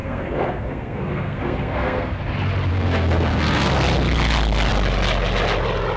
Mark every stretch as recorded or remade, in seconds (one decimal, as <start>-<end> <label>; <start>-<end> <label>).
0.0-2.2 remade; 2.2-2.7 recorded; 2.7-3.7 remade; 3.7-6.0 recorded